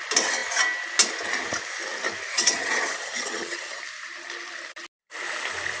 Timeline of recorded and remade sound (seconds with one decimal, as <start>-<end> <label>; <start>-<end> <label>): 0.0-2.3 recorded; 2.3-3.8 remade; 3.8-5.8 recorded